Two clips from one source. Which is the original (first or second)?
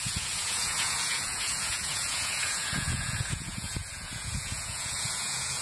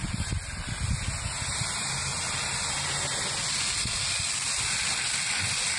second